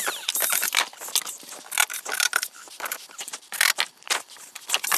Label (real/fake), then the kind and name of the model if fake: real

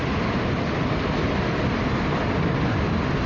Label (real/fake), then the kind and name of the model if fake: real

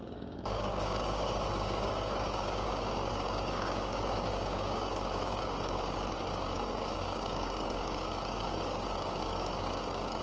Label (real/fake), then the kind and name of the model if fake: fake, codec, DAC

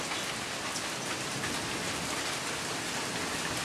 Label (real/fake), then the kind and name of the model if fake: real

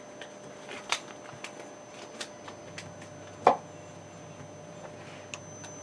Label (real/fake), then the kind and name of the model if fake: real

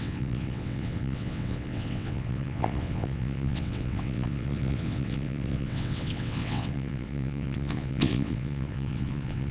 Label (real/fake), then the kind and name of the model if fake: fake, vocoder, WaveNeXt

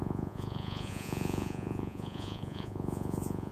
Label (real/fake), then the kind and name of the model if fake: fake, vocoder, Vocos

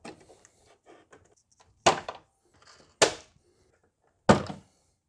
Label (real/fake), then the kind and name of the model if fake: real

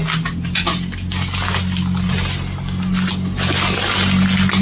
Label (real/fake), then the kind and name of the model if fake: real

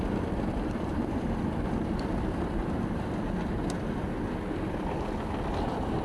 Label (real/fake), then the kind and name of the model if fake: real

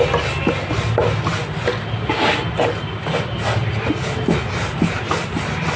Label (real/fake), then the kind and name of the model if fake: real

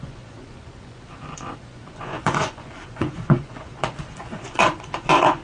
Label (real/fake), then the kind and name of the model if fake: fake, vocoder, Vocos